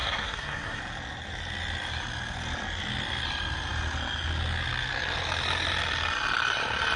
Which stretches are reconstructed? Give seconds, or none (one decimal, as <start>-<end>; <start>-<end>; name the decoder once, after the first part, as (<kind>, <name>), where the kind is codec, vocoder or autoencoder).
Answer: 0.0-0.8 (codec, SNAC)

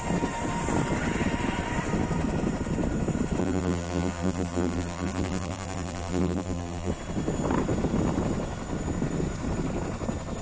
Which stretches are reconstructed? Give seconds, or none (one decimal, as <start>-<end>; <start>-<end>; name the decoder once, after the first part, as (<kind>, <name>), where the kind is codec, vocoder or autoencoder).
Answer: 3.4-6.9 (vocoder, BigVGAN v2)

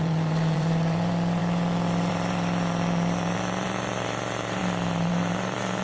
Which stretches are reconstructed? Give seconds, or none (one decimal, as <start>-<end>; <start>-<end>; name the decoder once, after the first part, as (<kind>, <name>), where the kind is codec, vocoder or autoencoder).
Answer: 0.0-4.6 (vocoder, BigVGAN v2); 5.1-5.8

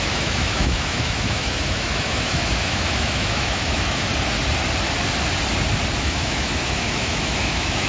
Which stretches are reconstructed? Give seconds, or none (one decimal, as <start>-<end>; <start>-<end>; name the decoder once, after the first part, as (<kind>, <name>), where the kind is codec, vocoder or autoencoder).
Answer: 0.0-4.1 (autoencoder, DAC-VAE); 6.0-7.9

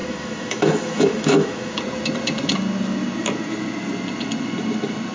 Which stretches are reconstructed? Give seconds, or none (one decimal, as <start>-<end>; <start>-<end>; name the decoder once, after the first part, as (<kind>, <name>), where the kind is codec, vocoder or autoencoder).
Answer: 0.0-1.8 (autoencoder, DAC-VAE)

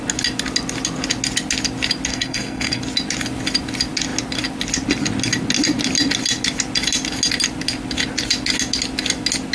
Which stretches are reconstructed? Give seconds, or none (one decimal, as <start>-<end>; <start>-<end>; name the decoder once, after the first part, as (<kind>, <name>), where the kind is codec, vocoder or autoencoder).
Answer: 2.1-2.8 (codec, SNAC)